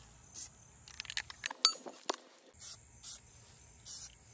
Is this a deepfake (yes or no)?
no